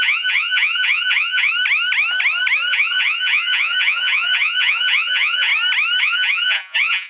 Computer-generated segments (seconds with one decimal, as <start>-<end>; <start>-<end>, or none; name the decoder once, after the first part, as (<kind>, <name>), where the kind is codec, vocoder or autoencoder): 0.0-1.5 (vocoder, Vocos); 2.7-5.5; 6.0-7.1